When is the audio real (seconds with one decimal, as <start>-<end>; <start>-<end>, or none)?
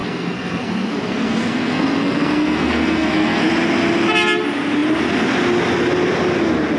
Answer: 3.5-6.8